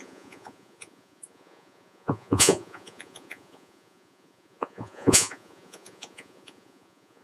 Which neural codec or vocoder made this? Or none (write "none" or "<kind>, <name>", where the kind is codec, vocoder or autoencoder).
vocoder, Vocos